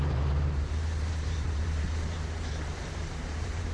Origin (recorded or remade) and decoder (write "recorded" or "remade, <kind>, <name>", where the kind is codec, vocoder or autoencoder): remade, vocoder, BigVGAN v2